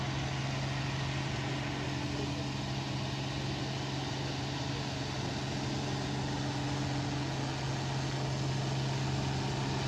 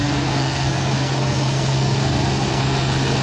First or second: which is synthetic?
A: second